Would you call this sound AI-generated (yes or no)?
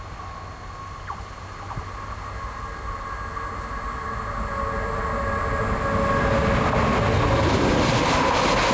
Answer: no